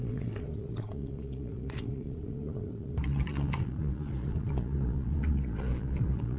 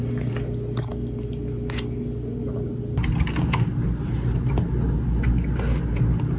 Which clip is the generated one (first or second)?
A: first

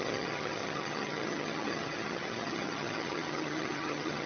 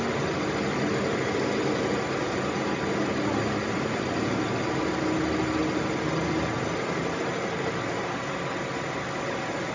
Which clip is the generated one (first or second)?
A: first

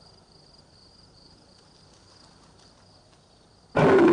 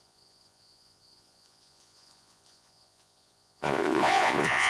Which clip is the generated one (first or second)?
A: second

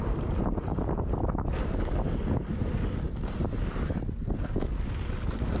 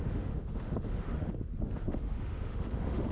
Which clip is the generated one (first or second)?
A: second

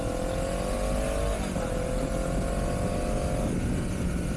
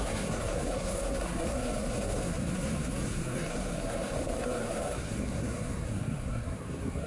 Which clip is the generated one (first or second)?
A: second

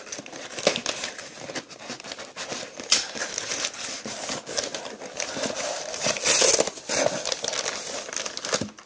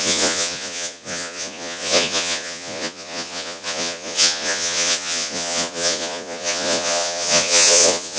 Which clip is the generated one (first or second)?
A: second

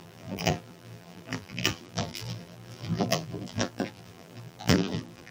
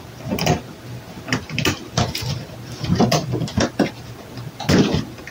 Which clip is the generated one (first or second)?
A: first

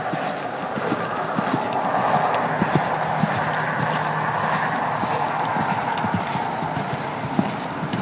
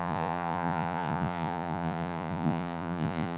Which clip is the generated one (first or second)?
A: second